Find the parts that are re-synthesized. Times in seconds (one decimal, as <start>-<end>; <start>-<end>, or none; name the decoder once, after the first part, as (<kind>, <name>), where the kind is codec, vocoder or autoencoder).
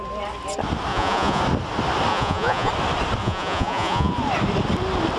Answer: 0.9-1.4 (vocoder, Vocos); 2.1-2.7; 3.2-4.1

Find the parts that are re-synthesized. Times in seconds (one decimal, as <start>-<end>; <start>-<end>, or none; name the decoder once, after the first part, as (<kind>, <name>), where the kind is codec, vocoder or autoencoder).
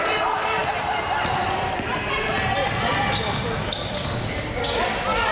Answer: 3.9-4.8 (codec, DAC)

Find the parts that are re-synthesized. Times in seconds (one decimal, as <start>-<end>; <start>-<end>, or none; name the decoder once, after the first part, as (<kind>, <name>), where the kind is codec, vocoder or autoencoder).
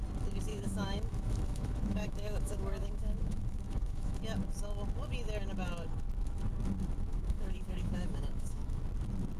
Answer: 0.5-4.2 (autoencoder, DAC-VAE); 7.1-8.8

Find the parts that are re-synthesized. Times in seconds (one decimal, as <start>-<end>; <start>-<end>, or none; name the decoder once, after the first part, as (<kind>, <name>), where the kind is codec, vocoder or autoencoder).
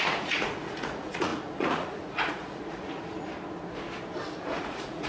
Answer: 0.0-3.3 (vocoder, Vocos); 4.4-5.1